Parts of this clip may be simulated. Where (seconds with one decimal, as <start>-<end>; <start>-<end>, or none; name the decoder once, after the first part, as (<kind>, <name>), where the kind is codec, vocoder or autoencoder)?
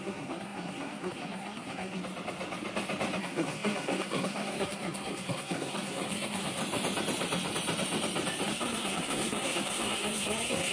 0.0-2.0 (codec, SNAC); 3.2-6.6; 8.5-10.7